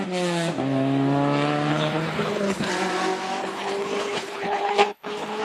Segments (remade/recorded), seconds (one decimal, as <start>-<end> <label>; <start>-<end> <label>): 0.0-1.7 recorded; 1.7-2.7 remade; 2.7-3.4 recorded; 3.4-5.4 remade